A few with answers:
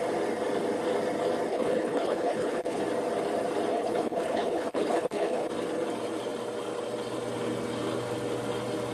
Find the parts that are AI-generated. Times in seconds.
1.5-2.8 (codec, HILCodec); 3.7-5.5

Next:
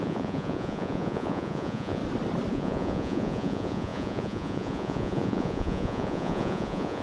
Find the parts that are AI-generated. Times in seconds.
0.0-2.0 (vocoder, Vocos); 2.5-7.0

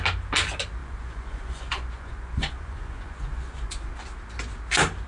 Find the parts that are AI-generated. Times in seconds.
0.8-3.9 (vocoder, Vocos)

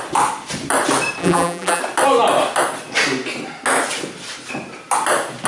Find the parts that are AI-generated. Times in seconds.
1.2-1.8 (vocoder, BigVGAN v2)

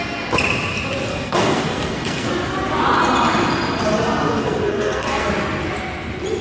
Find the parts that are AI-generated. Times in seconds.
1.1-2.3 (codec, SNAC); 4.3-5.3

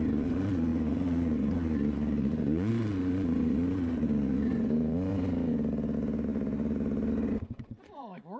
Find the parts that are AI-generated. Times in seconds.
0.0-5.1 (vocoder, Vocos); 7.3-8.4